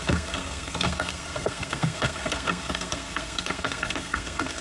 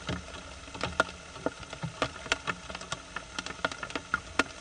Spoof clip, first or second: first